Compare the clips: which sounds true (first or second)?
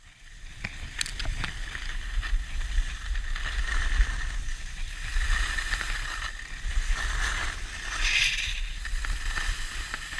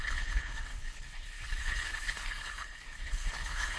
first